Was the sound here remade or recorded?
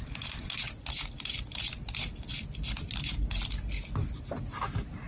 recorded